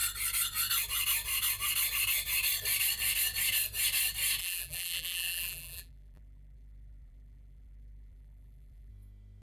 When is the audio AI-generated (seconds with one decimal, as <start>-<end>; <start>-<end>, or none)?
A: 4.4-8.9